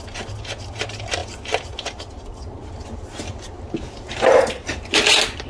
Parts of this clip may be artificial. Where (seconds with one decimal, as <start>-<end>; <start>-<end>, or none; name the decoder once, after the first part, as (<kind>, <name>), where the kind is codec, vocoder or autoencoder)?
none